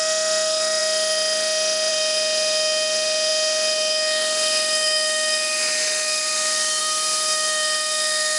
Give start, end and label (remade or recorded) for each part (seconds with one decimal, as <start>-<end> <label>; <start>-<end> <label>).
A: 0.0-8.4 remade